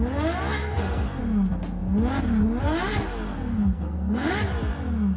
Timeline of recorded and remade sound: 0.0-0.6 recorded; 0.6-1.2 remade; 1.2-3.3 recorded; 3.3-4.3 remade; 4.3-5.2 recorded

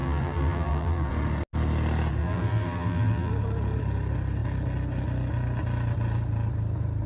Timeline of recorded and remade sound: 0.0-1.1 remade; 1.1-2.2 recorded; 2.2-3.3 remade; 3.3-7.1 recorded